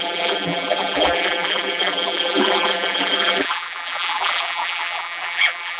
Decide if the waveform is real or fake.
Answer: fake